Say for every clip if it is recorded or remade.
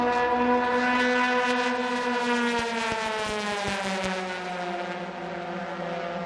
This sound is recorded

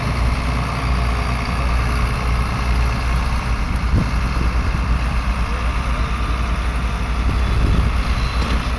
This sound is recorded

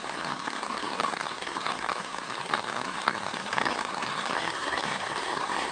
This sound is remade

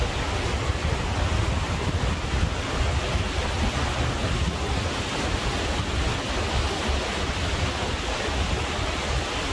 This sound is recorded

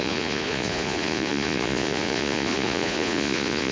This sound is remade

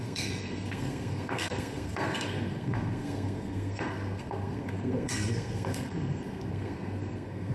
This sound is remade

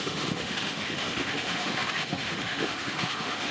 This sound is remade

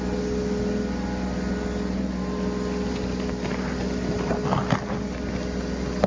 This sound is recorded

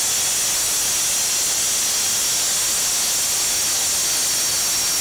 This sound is recorded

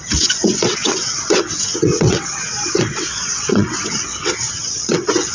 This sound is remade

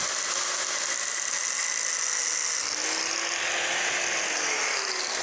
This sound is recorded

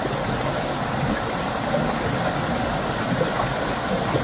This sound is recorded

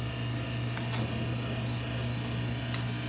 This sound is recorded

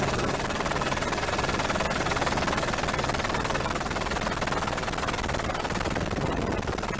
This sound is recorded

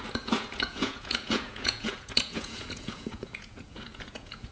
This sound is remade